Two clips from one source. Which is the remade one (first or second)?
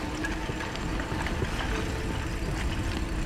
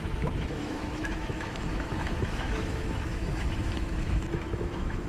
second